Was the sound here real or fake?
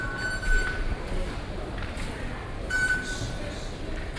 real